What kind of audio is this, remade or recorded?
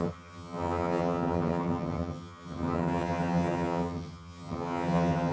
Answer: remade